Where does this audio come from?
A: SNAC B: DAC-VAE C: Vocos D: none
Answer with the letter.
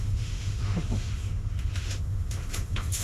B